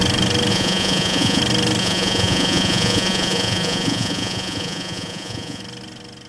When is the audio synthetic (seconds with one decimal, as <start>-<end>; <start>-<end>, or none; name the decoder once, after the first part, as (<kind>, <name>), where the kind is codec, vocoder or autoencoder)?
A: 0.5-1.4 (vocoder, Vocos); 1.8-5.6